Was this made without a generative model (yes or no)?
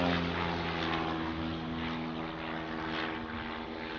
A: yes